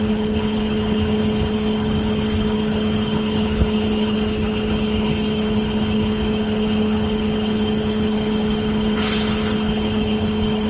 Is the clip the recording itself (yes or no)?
no